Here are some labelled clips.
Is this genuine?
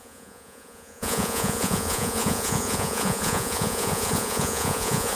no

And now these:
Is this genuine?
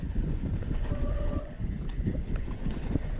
no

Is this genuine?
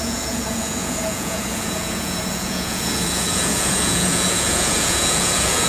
no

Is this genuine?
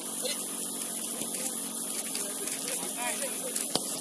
yes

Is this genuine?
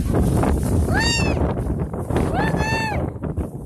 no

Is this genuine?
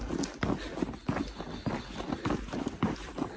yes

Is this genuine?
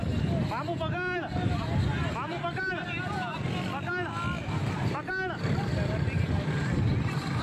yes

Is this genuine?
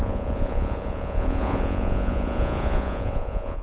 no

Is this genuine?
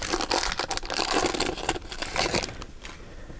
yes